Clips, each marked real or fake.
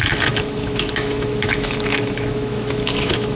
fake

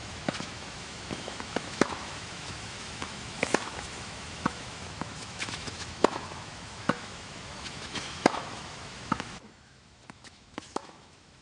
fake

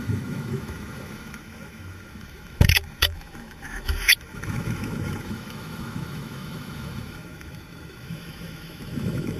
fake